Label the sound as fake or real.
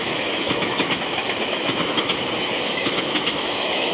fake